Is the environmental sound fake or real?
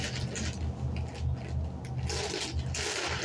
real